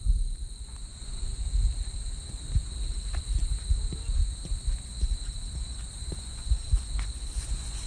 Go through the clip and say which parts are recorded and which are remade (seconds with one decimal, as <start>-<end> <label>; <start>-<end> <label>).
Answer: 0.0-1.5 remade; 1.5-6.2 recorded; 6.2-7.9 remade